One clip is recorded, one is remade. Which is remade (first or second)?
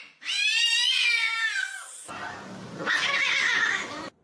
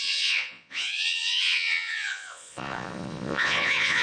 second